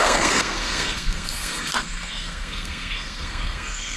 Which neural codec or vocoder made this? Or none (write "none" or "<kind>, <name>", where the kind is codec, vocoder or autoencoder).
codec, SNAC